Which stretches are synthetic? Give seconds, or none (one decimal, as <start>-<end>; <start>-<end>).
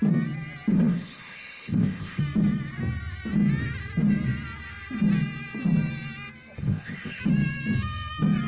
0.7-2.2; 6.6-7.2